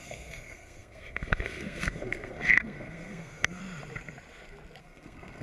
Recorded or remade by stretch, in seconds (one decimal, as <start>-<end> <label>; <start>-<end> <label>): 0.0-3.6 remade; 3.6-4.8 recorded; 4.8-5.4 remade